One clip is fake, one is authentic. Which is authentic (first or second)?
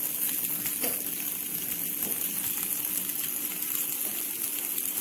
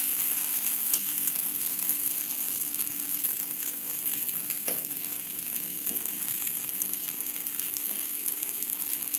first